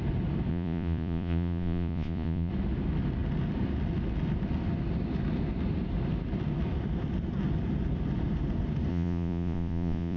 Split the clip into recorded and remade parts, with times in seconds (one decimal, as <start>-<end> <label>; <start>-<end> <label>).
0.0-0.5 recorded; 0.5-2.5 remade; 2.5-8.9 recorded; 8.9-10.2 remade